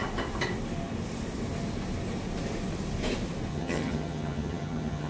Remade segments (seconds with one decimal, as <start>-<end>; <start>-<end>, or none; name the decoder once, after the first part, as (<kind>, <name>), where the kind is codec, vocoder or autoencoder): 3.5-5.1 (vocoder, HiFi-GAN)